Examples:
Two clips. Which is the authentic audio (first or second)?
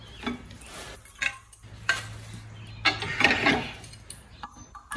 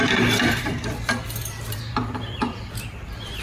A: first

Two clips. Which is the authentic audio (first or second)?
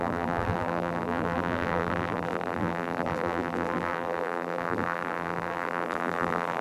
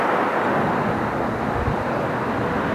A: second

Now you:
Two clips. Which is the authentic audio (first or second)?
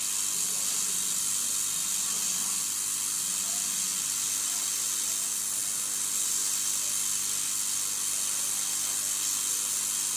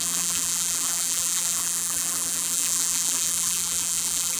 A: first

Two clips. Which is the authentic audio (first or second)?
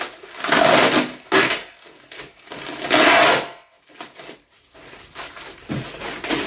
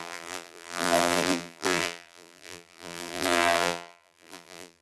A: first